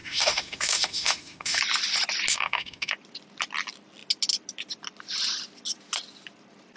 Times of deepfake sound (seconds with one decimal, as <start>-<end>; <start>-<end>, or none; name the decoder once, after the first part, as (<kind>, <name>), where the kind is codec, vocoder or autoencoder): 0.0-1.6 (autoencoder, DAC-VAE); 2.3-2.9